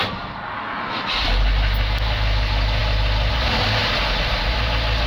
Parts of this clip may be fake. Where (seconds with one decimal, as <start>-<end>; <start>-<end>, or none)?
none